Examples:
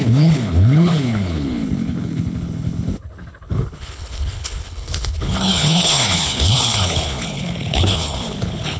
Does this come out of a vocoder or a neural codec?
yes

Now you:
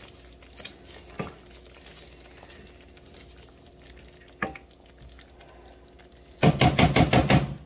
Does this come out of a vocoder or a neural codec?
no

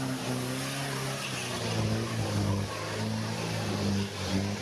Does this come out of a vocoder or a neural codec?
no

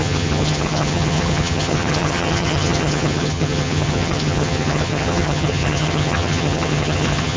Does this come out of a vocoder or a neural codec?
yes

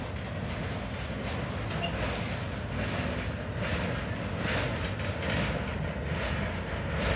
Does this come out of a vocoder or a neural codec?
no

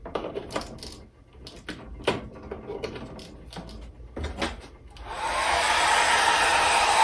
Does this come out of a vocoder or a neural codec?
no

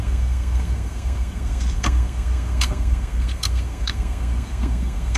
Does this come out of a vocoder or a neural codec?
yes